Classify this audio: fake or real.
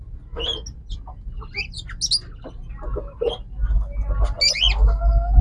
real